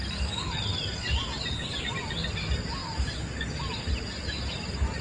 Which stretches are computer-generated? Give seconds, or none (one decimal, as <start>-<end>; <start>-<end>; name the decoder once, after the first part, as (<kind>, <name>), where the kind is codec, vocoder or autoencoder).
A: none